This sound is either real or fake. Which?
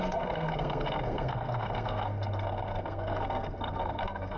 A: fake